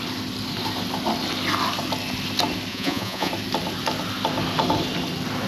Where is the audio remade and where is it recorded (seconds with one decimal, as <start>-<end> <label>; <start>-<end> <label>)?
0.0-2.7 recorded; 2.7-3.3 remade; 3.3-5.5 recorded